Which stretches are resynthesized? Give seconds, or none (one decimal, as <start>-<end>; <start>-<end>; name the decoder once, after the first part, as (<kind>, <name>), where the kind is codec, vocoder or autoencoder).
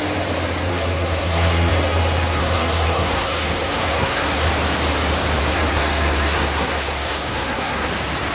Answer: 0.7-1.7 (codec, SNAC); 2.4-4.5; 5.4-7.9